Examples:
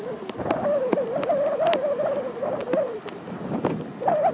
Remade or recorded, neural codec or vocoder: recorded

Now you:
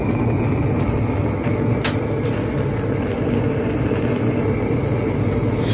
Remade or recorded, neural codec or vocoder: recorded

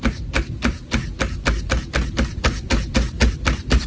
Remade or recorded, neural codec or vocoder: recorded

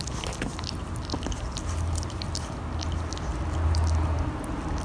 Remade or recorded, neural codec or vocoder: recorded